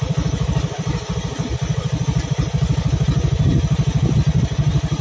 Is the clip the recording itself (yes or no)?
yes